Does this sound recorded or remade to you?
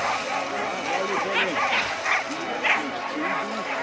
recorded